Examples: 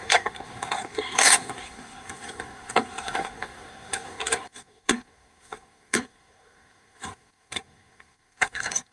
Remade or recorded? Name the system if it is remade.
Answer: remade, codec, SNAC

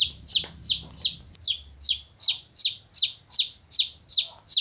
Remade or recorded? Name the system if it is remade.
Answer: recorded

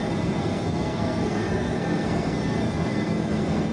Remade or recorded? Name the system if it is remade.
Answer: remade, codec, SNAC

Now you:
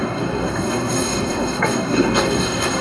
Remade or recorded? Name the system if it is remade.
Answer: remade, codec, SNAC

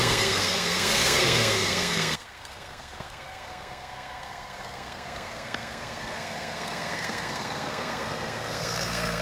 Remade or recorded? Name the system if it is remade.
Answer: remade, codec, SNAC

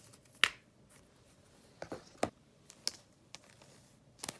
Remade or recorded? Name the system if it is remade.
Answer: recorded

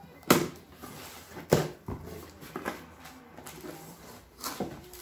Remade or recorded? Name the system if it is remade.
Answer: recorded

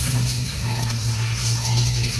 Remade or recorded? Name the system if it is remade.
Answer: remade, codec, SNAC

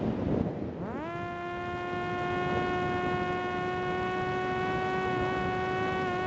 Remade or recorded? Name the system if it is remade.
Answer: recorded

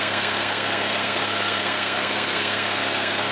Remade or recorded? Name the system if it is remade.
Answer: remade, codec, SNAC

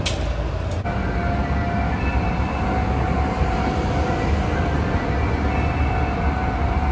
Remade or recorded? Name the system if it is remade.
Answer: recorded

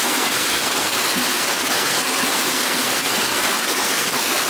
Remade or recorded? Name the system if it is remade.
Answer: remade, codec, SNAC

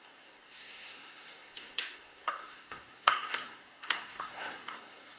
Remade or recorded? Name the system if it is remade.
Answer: remade, codec, SNAC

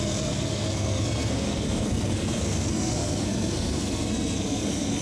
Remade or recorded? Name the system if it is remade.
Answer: remade, codec, SNAC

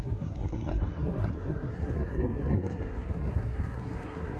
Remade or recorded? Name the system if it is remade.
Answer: remade, codec, SNAC